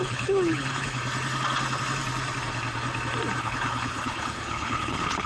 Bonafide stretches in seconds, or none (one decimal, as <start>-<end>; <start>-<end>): 1.0-3.4